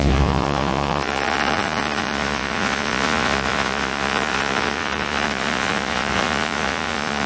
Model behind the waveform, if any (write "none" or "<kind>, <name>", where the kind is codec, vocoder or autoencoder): vocoder, Vocos